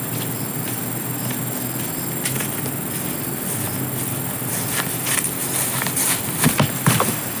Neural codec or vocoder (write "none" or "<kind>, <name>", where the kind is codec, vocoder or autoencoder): none